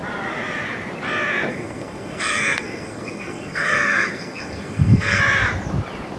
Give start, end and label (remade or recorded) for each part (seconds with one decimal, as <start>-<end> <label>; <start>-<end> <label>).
0.0-1.5 recorded; 1.5-5.2 remade; 5.2-6.2 recorded